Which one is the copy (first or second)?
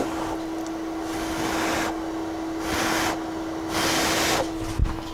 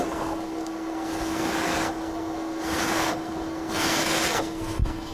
second